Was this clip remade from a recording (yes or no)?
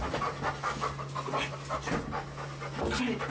no